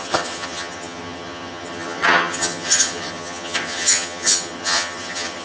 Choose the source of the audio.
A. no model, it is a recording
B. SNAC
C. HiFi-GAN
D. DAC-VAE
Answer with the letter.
C